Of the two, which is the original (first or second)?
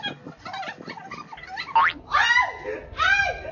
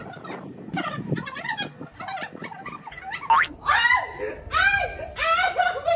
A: first